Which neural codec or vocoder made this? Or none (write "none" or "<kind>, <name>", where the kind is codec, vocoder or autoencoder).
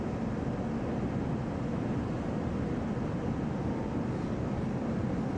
none